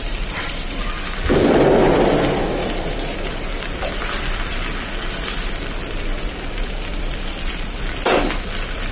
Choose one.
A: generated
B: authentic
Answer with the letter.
A